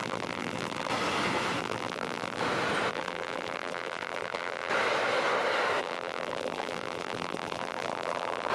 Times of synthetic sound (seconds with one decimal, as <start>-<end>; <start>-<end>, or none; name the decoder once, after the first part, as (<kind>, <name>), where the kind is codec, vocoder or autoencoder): 0.0-0.9 (vocoder, BigVGAN v2); 1.6-2.4; 2.9-4.7; 5.8-8.5